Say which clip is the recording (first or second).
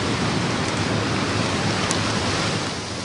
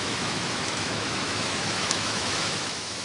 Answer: first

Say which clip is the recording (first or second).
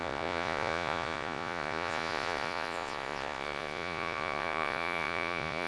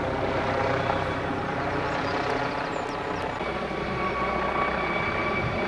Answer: second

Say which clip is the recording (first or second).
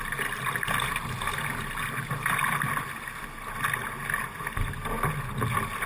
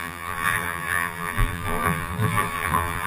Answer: first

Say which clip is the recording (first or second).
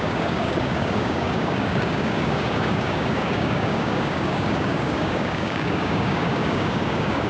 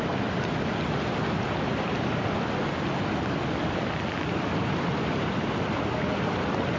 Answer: second